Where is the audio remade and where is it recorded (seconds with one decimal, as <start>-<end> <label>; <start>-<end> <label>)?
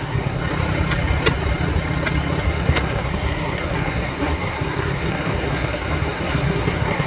0.0-0.4 remade; 0.4-2.4 recorded; 2.4-7.1 remade